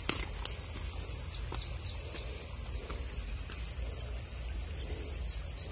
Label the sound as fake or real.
real